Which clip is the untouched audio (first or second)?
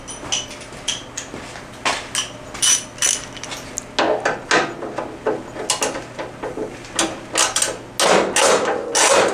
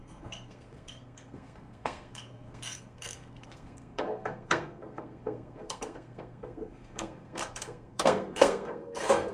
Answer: first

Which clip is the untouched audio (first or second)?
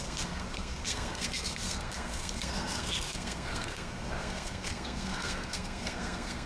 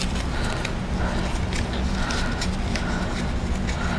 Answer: second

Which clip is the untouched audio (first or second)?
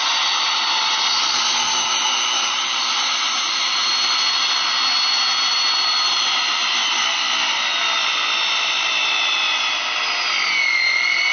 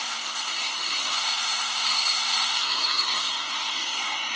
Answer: first